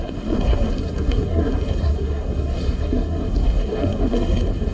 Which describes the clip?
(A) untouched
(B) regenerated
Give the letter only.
B